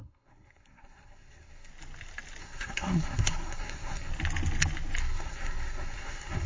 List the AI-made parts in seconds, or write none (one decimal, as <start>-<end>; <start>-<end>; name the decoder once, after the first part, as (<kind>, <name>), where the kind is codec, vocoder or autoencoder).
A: 0.0-1.7 (codec, SNAC); 2.4-4.1; 5.0-6.5